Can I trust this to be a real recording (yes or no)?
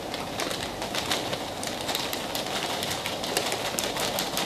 yes